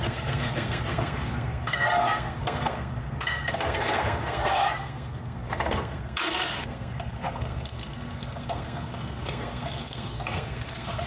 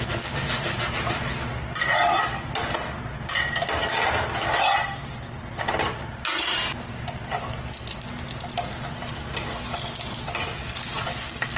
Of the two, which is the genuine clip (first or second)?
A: second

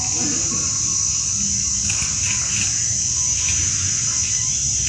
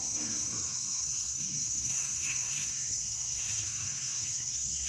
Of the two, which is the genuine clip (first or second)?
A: first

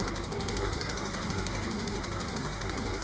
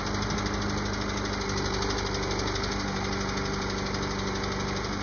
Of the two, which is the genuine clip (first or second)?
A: second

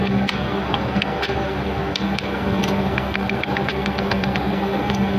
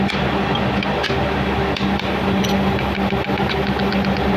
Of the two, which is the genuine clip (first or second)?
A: second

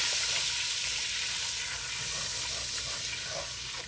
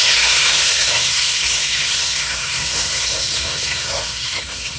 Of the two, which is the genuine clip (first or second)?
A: first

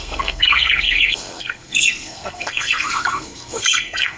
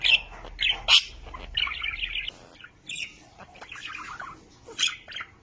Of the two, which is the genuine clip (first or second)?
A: second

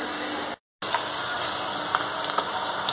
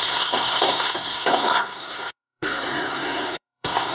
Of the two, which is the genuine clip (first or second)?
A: first